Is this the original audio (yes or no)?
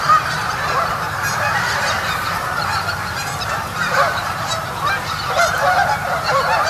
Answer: no